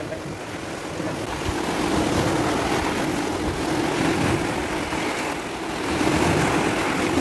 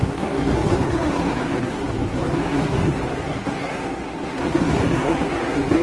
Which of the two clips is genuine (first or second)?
first